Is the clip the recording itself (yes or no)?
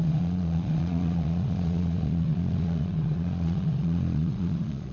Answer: no